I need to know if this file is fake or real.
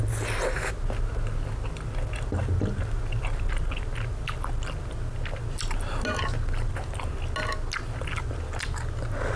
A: real